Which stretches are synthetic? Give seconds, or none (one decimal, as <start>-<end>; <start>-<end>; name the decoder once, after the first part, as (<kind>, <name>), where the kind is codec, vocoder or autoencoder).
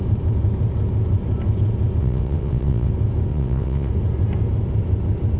2.0-2.9 (vocoder, WaveNeXt); 3.3-3.9